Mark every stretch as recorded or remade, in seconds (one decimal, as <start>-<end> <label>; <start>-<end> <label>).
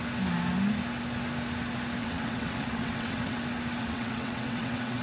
0.0-2.0 recorded; 2.0-3.4 remade; 3.4-3.8 recorded; 3.8-5.0 remade